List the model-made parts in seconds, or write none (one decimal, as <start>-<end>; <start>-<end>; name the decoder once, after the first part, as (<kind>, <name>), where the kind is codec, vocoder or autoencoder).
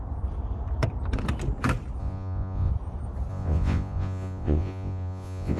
2.0-2.7 (vocoder, Vocos); 3.3-5.6